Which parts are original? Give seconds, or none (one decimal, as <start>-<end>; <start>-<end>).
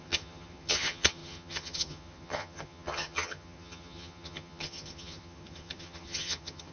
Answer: none